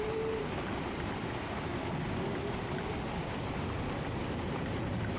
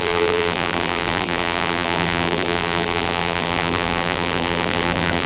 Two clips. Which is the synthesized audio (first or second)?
second